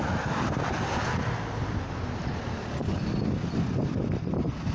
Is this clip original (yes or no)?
yes